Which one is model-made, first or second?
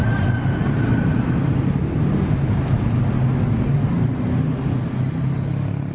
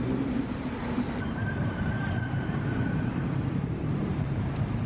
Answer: second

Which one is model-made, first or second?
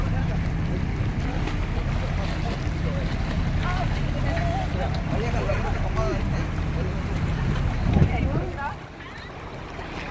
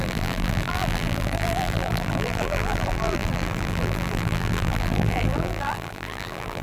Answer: second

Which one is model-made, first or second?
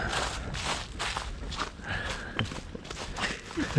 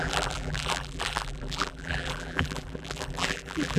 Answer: second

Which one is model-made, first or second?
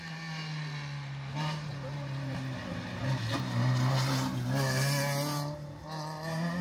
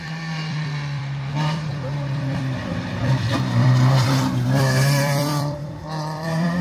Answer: second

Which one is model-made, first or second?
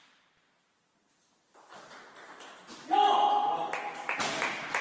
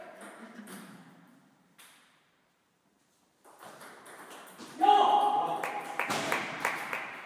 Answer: second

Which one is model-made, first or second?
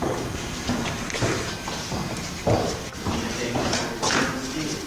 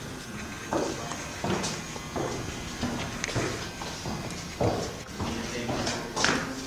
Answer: first